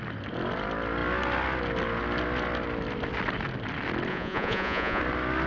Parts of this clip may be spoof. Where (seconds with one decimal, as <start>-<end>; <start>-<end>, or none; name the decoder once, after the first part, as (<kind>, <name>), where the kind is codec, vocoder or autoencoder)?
4.1-5.0 (vocoder, Vocos)